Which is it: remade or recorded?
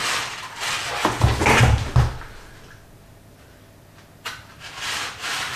recorded